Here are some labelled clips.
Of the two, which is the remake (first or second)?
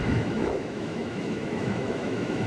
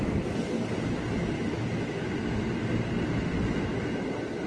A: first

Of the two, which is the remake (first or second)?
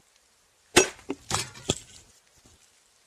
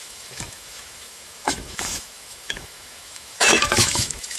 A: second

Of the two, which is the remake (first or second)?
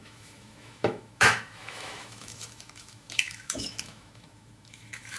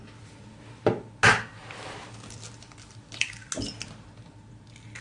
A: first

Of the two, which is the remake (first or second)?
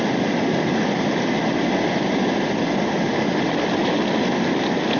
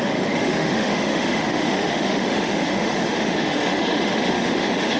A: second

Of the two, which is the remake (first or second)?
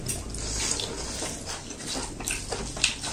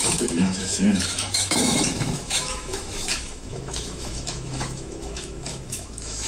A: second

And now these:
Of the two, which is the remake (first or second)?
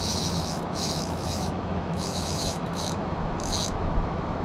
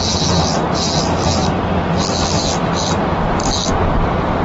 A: first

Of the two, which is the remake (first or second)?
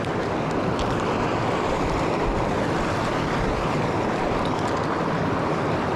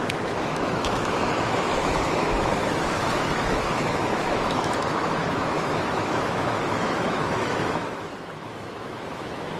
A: second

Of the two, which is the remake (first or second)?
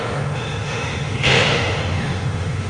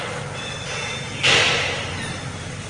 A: first